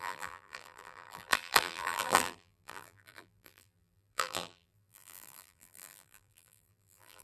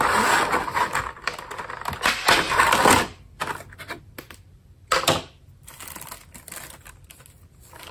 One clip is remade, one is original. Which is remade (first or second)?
first